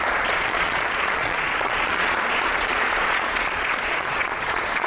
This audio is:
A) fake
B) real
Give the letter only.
A